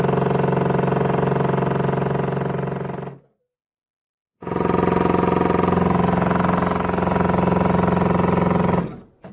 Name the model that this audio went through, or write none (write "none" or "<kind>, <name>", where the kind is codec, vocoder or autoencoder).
none